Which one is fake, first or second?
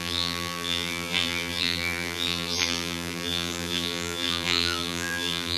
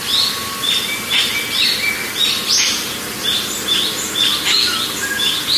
first